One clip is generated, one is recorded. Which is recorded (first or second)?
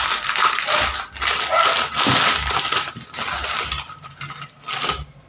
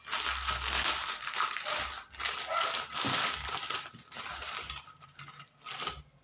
first